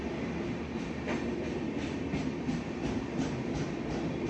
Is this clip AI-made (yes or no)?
no